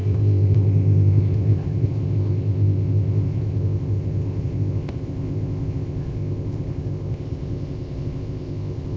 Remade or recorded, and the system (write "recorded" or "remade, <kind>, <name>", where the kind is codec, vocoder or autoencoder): remade, codec, ZipCodec